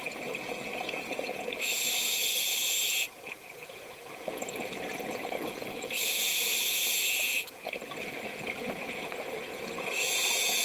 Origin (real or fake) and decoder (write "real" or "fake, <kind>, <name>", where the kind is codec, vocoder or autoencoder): fake, vocoder, Vocos